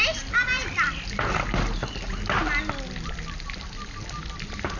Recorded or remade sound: recorded